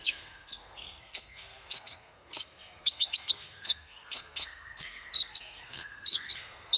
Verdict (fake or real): fake